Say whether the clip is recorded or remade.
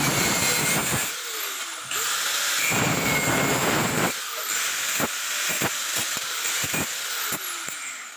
recorded